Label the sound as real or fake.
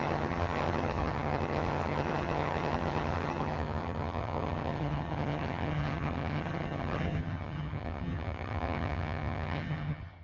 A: fake